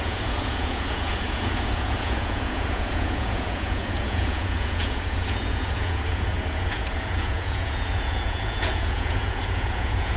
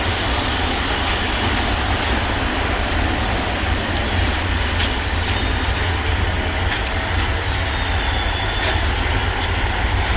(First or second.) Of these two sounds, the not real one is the first